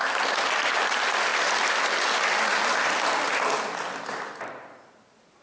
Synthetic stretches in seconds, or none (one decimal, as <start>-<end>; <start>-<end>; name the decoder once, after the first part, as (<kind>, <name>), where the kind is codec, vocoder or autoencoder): none